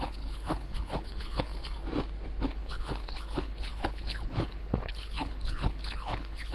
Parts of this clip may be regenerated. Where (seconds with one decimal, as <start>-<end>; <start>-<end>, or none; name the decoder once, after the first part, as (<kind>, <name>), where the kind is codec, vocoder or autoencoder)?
0.0-1.5 (codec, HILCodec); 2.4-6.5